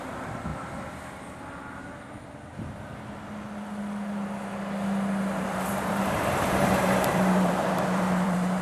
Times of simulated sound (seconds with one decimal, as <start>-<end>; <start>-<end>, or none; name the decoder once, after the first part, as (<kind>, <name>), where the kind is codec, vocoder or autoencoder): 0.0-0.5 (vocoder, BigVGAN v2); 5.4-8.6